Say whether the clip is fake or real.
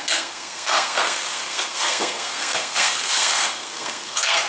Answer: fake